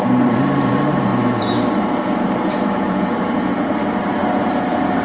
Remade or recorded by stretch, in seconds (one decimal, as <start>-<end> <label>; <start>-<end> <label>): 0.0-5.0 remade

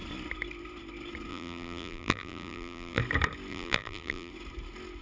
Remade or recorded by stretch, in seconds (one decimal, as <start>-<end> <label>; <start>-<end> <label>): 0.0-1.3 recorded; 1.3-3.0 remade; 3.0-3.5 recorded; 3.5-4.3 remade; 4.3-5.0 recorded

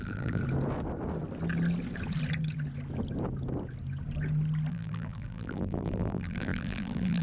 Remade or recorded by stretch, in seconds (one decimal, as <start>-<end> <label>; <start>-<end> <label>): 0.0-0.4 remade; 0.4-4.7 recorded; 4.7-7.2 remade

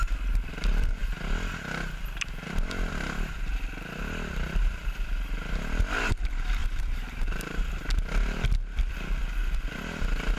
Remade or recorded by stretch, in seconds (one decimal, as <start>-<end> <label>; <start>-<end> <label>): 0.0-6.6 recorded; 6.6-7.7 remade; 7.7-10.4 recorded

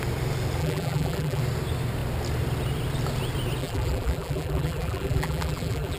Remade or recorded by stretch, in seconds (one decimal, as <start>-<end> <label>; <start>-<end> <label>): 0.0-0.6 recorded; 0.6-1.4 remade; 1.4-3.6 recorded; 3.6-6.0 remade

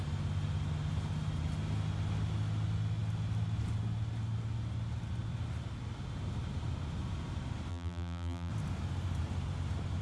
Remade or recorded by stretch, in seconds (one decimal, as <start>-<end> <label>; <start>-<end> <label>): 0.0-7.7 recorded; 7.7-8.5 remade; 8.5-10.0 recorded

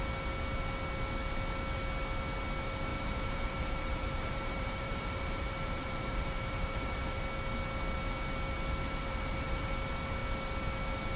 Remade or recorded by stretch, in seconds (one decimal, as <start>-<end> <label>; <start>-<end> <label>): 0.0-2.9 recorded; 2.9-7.2 remade; 7.2-9.0 recorded; 9.0-9.7 remade; 9.7-11.2 recorded

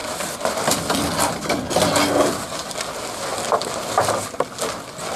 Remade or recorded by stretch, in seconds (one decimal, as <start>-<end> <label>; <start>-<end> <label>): 0.0-1.0 remade; 1.0-5.2 recorded